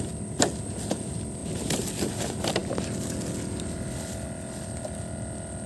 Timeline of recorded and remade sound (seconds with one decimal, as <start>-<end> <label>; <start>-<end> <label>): 0.0-5.7 recorded